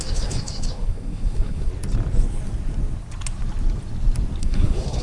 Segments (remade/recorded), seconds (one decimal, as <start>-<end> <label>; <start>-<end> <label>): 0.0-1.7 remade; 1.7-4.4 recorded; 4.4-5.0 remade